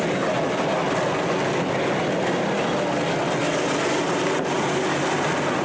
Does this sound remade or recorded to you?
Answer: recorded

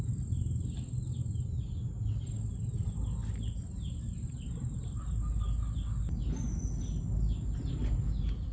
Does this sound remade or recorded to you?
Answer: recorded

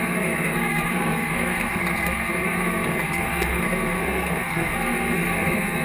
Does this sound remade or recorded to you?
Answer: remade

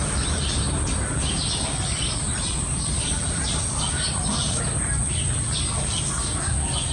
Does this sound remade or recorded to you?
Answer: recorded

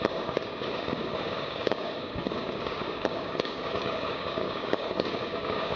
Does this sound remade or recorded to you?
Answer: remade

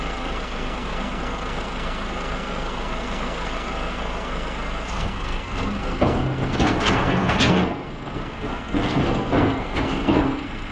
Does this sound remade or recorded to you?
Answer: remade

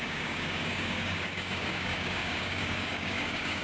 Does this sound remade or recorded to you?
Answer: remade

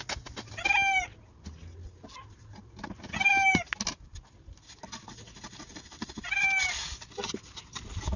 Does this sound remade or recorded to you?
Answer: recorded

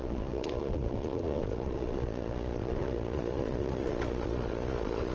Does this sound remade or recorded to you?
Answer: remade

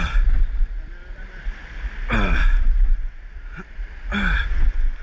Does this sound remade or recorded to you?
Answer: recorded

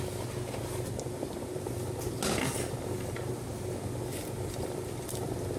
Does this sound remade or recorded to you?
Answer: recorded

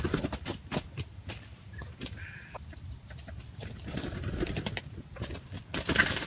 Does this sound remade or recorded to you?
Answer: remade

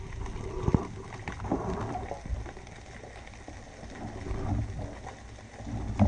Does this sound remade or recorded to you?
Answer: recorded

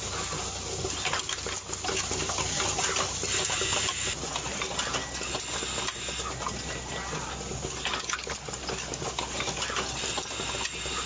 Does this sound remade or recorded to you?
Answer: recorded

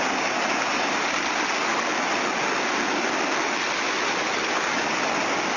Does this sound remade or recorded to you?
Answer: recorded